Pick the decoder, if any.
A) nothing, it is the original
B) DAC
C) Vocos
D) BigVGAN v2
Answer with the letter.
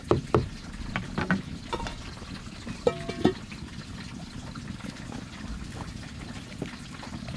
A